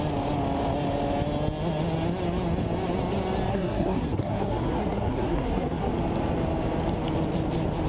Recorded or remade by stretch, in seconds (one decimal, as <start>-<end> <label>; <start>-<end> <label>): 0.0-3.5 recorded; 3.5-5.9 remade; 5.9-7.9 recorded